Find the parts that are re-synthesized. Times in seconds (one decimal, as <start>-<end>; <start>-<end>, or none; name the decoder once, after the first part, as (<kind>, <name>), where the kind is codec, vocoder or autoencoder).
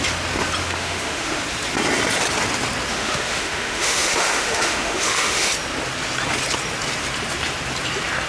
0.6-1.4 (autoencoder, DAC-VAE); 2.9-5.5